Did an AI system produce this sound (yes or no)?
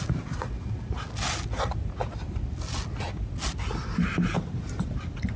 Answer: no